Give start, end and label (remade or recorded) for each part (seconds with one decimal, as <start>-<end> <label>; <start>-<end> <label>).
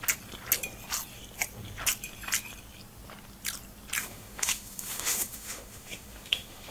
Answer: 0.0-4.0 recorded; 4.0-6.7 remade